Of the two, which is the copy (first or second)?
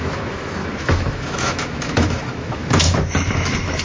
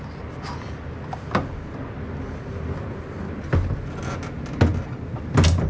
first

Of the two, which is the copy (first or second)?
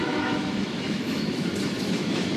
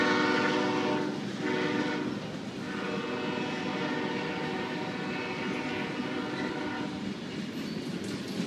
first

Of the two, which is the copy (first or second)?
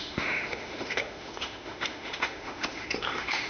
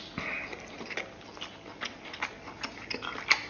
first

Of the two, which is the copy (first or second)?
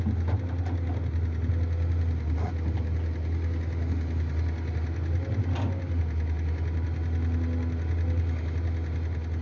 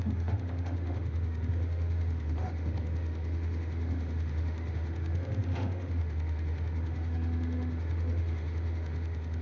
second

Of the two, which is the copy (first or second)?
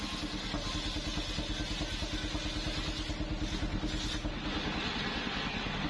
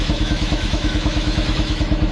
second